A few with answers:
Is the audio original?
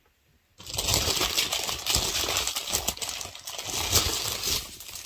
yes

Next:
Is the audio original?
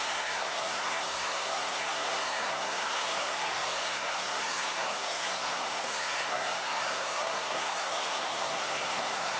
no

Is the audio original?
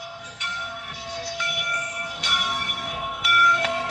no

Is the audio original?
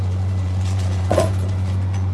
no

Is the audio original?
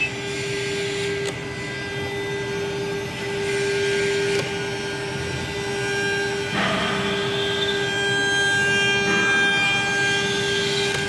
yes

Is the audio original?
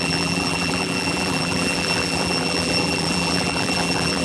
no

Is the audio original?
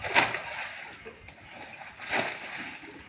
yes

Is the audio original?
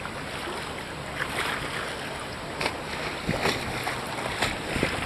yes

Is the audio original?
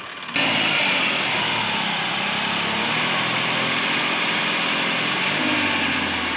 yes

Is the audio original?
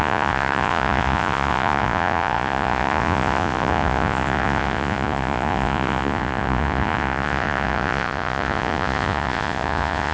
no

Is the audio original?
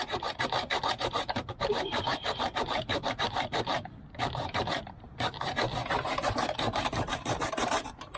no